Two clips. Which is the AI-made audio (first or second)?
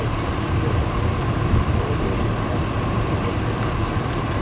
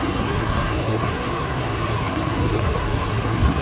second